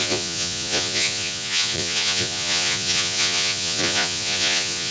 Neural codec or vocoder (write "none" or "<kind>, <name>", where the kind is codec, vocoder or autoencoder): vocoder, Vocos